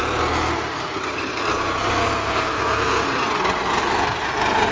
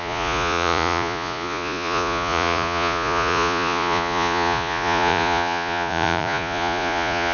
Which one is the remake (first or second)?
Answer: second